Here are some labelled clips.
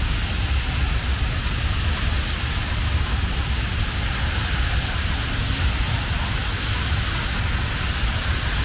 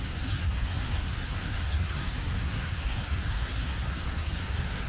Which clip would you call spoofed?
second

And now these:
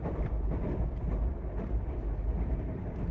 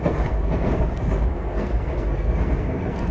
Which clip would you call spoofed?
second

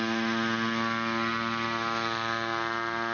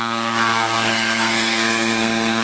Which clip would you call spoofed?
second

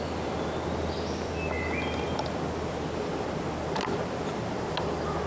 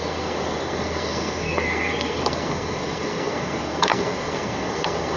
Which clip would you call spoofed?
second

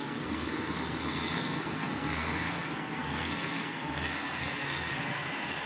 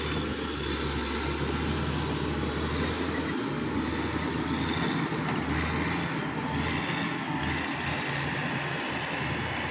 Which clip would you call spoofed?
first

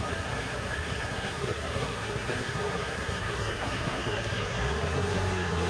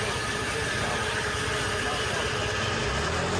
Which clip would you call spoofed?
first